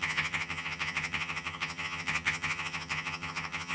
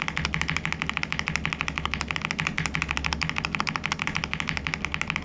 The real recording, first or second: second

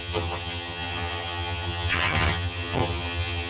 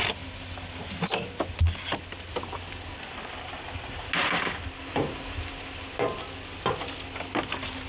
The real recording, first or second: second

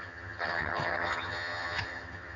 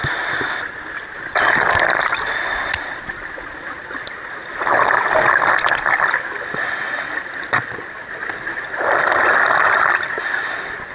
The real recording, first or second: second